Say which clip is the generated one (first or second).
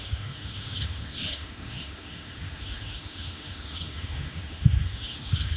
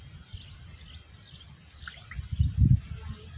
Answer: first